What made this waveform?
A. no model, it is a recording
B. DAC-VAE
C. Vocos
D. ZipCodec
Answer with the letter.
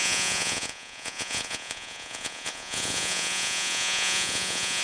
C